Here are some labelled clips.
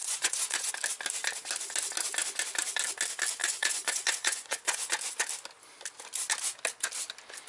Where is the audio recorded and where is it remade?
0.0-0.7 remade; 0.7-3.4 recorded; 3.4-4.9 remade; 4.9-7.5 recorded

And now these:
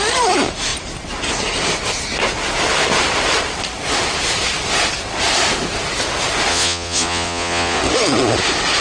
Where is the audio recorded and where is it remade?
0.0-6.5 recorded; 6.5-7.8 remade; 7.8-8.8 recorded

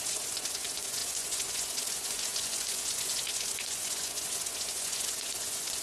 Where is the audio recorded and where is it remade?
0.0-5.8 remade

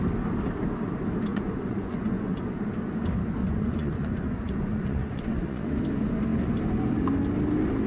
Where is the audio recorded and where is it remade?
0.0-1.3 recorded; 1.3-2.6 remade; 2.6-3.4 recorded; 3.4-5.8 remade; 5.8-7.9 recorded

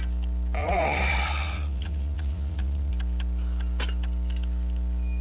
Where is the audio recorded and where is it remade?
0.0-0.6 recorded; 0.6-2.9 remade; 2.9-5.2 recorded